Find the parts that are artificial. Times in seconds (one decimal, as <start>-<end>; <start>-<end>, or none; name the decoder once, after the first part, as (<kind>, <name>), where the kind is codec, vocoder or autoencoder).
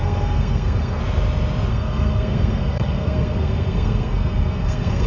0.0-1.0 (codec, SNAC); 1.7-5.1